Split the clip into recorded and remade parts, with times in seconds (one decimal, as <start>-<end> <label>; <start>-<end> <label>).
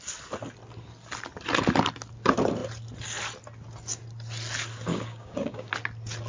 0.0-4.9 recorded; 4.9-5.7 remade; 5.7-6.3 recorded